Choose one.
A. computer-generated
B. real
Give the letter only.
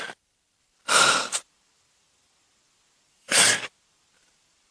A